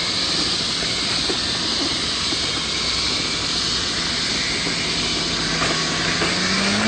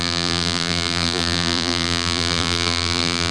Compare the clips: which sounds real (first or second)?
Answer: first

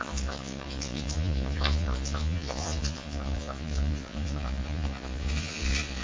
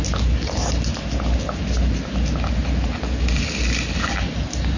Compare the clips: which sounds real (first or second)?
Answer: second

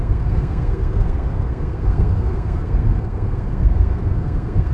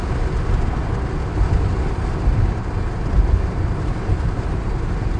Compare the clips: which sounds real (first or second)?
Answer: second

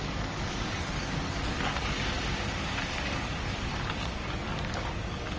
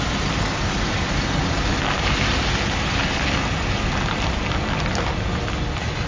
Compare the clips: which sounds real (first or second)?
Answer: second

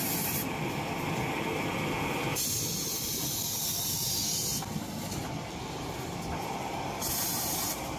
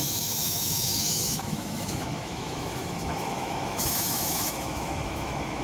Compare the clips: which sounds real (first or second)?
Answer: first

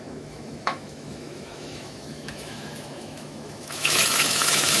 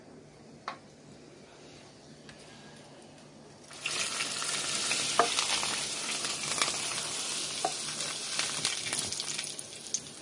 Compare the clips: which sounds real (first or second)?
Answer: second